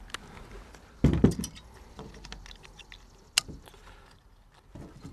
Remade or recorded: recorded